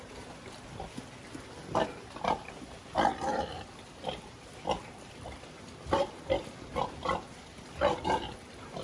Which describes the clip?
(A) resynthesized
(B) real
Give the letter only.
A